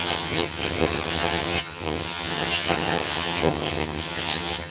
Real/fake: fake